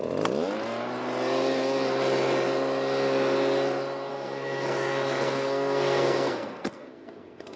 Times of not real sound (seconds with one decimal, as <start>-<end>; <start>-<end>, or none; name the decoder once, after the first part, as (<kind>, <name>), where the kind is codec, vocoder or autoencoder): 4.1-7.6 (codec, SNAC)